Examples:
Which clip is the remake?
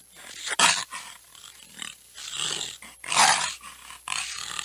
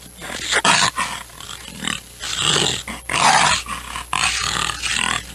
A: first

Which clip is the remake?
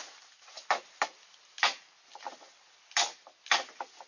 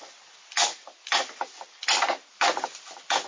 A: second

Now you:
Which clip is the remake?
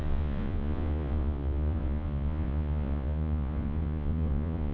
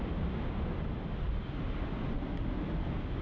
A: first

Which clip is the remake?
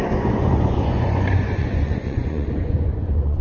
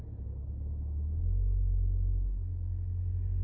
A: first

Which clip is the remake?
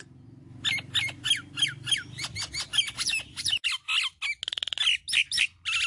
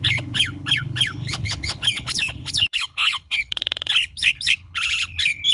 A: second